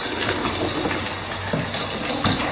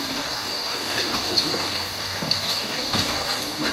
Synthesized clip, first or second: second